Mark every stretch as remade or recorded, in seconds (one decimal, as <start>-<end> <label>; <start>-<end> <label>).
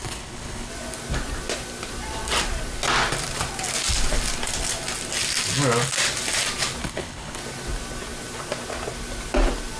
0.0-0.7 remade; 0.7-6.8 recorded; 6.8-7.4 remade; 7.4-9.8 recorded